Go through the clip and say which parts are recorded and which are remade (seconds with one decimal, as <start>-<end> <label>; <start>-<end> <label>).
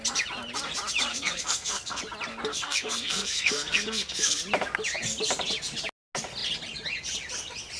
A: 0.0-1.1 recorded; 1.1-2.0 remade; 2.0-2.5 recorded; 2.5-4.4 remade; 4.4-7.8 recorded